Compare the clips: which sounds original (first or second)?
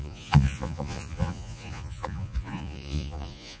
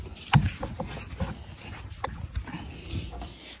second